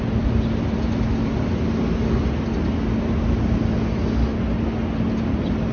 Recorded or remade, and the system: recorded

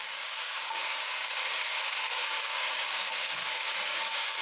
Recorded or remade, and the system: remade, codec, DAC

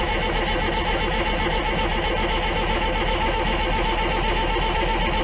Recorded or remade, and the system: recorded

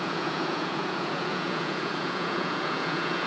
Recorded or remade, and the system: remade, vocoder, Vocos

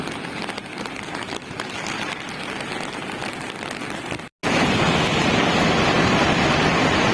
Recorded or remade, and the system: recorded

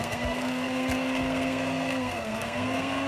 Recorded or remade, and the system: remade, codec, SNAC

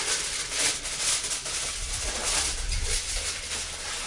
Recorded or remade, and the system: recorded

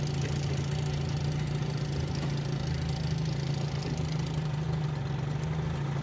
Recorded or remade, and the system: recorded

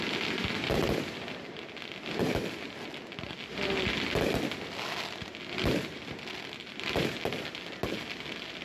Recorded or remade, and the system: recorded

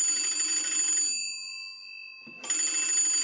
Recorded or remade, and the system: recorded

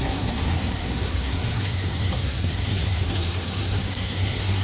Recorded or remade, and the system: remade, codec, SNAC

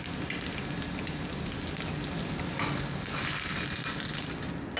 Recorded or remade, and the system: recorded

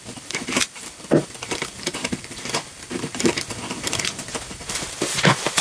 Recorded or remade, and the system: remade, vocoder, BigVGAN v2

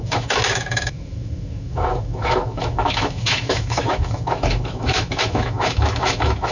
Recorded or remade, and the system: remade, autoencoder, DAC-VAE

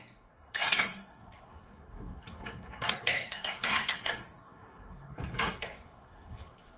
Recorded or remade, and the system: remade, codec, SNAC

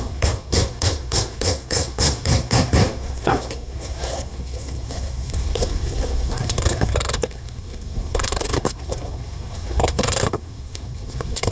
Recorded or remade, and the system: remade, codec, SNAC